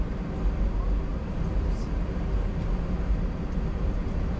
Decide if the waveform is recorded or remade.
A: recorded